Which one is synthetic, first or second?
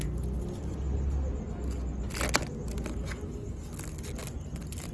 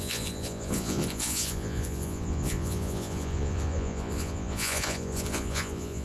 second